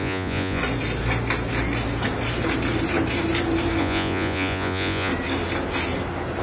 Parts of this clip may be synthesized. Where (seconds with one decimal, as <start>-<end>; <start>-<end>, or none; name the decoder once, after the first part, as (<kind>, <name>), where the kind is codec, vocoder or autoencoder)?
0.0-0.6 (vocoder, Vocos); 3.8-5.1